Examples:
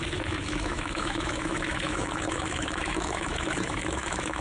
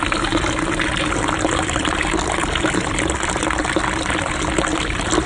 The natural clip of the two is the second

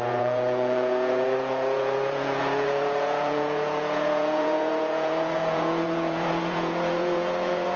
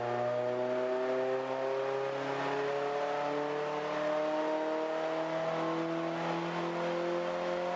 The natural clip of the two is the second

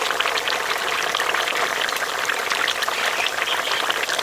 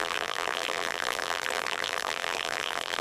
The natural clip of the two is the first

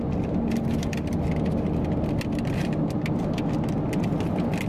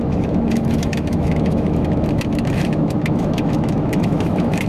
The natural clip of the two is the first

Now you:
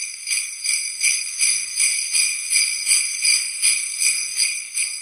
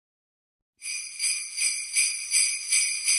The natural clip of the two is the second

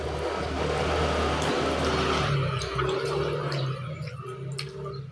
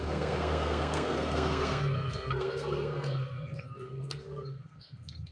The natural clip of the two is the first